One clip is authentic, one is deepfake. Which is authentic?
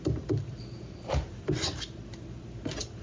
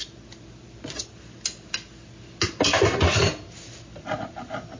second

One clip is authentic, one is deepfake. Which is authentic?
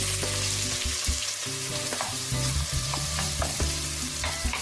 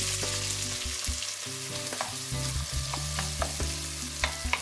second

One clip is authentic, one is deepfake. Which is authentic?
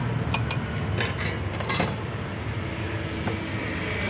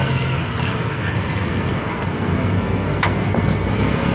first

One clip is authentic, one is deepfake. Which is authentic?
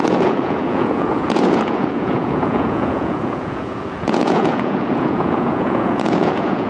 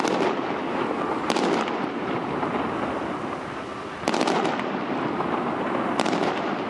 second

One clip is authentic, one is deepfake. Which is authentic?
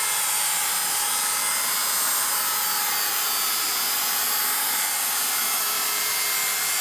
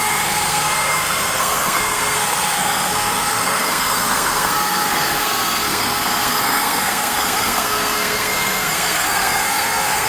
first